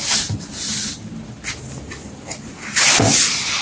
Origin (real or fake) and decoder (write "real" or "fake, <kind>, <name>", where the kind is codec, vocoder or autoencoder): real